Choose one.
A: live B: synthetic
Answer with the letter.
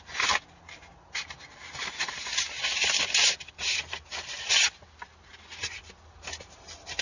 A